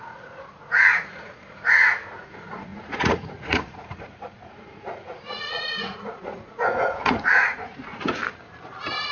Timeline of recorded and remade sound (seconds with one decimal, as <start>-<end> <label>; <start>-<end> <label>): 0.0-8.2 remade; 8.2-9.1 recorded

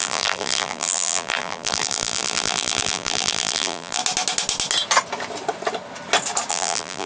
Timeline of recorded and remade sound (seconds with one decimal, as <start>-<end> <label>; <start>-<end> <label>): 0.0-4.0 remade; 4.0-6.5 recorded; 6.5-7.1 remade

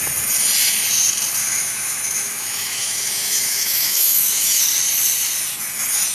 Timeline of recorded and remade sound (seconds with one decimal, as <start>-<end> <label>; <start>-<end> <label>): 0.0-1.4 recorded; 1.4-4.6 remade; 4.6-6.1 recorded

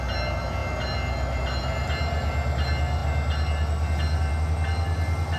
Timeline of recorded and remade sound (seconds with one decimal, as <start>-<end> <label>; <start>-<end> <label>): 0.0-5.4 recorded

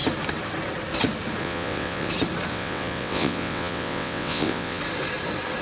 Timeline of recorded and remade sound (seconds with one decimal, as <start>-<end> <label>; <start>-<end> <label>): 0.0-1.4 recorded; 1.4-2.1 remade; 2.1-2.5 recorded; 2.5-4.8 remade; 4.8-5.6 recorded